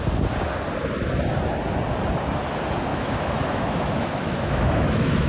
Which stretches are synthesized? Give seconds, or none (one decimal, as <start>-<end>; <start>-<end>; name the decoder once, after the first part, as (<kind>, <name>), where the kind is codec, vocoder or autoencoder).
2.9-5.3 (autoencoder, DAC-VAE)